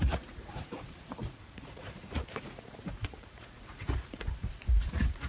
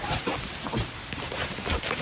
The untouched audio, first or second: second